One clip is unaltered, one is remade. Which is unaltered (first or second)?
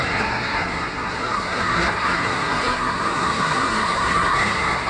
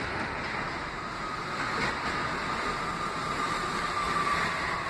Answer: second